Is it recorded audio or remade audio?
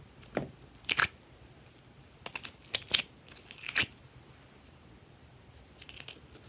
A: recorded